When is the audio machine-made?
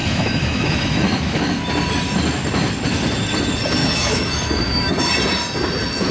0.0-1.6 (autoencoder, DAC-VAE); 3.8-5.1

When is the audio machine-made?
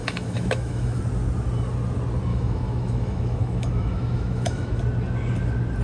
0.0-1.0 (autoencoder, DAC-VAE); 2.3-4.8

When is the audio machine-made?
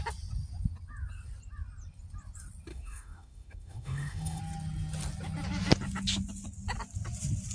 2.7-4.4 (autoencoder, DAC-VAE)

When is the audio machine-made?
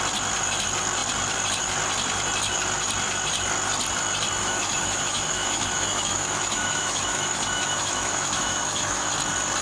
4.4-9.1 (autoencoder, DAC-VAE)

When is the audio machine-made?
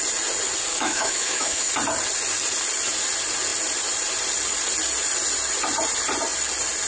0.7-1.7 (autoencoder, DAC-VAE)